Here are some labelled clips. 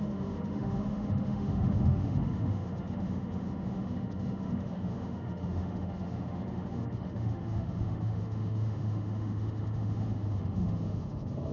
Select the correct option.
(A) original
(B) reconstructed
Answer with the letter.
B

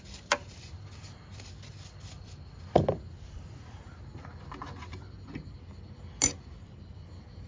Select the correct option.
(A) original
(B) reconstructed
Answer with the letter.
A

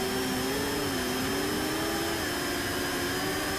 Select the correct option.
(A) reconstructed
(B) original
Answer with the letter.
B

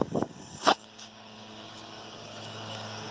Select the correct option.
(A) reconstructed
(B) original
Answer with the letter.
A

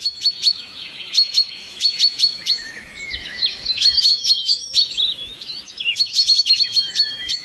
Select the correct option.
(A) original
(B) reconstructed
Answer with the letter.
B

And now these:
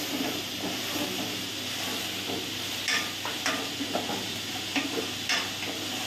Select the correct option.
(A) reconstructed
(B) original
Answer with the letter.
B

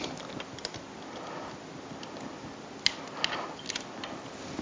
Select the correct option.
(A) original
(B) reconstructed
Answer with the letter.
A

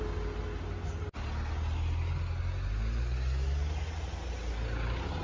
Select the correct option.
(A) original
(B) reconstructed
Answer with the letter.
A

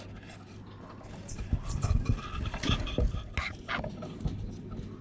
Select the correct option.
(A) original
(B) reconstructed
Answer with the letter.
A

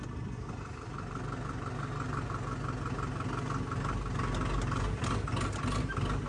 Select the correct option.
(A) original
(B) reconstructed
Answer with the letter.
A